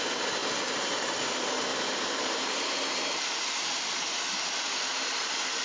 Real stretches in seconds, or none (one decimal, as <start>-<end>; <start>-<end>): 0.0-1.7; 4.2-5.6